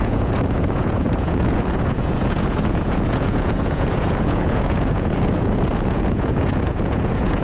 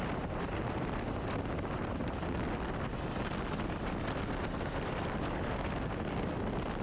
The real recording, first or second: second